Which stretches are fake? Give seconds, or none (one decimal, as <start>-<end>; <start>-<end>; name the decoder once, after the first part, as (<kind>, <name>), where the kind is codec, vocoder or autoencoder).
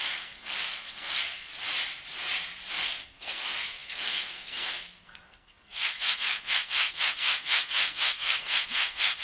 0.0-1.5 (codec, SNAC); 2.7-9.2